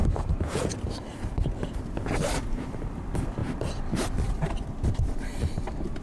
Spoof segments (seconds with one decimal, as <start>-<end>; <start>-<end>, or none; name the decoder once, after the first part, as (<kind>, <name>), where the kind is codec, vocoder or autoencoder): 0.0-1.2 (vocoder, BigVGAN v2); 3.4-6.0